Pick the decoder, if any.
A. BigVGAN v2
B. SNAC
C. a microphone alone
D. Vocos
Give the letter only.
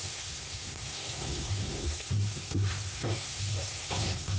B